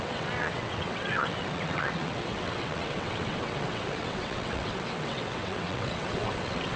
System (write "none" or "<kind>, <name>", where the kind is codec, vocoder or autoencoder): vocoder, WaveNeXt